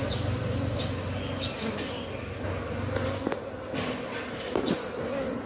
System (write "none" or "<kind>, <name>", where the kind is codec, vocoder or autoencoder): none